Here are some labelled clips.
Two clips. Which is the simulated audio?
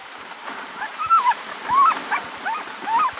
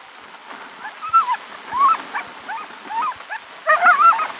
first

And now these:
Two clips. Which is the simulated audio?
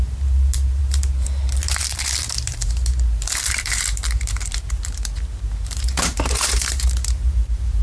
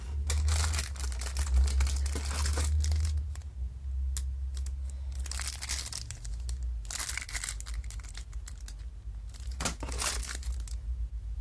first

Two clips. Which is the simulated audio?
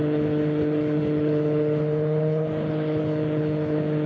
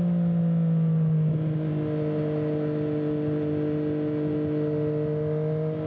first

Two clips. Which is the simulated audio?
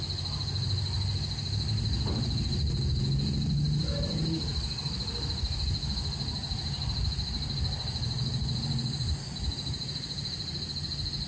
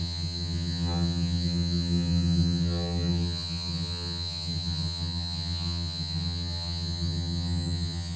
second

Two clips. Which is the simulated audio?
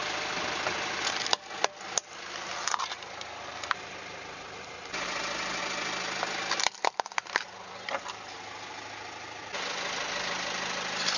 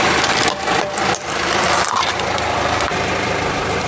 second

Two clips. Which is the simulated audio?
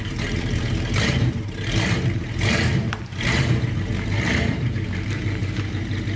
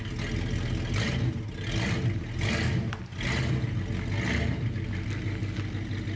first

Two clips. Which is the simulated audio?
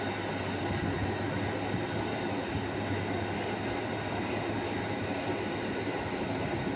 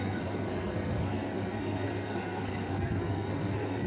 second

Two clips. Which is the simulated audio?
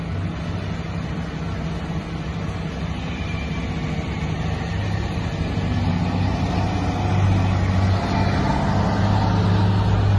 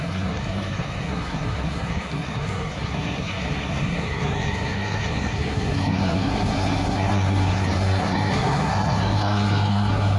second